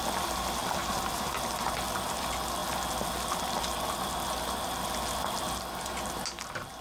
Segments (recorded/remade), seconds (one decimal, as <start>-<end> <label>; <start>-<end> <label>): 0.0-0.6 recorded; 0.6-1.3 remade; 1.3-6.8 recorded